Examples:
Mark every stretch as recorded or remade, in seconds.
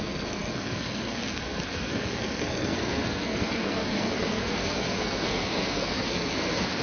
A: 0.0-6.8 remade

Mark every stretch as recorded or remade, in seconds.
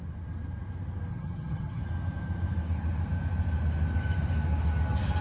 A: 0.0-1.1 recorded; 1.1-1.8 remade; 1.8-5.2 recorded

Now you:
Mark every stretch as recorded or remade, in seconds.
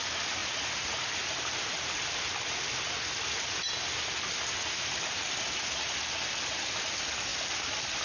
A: 0.0-8.0 recorded